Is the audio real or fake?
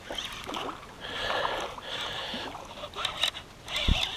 real